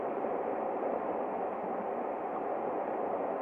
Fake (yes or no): no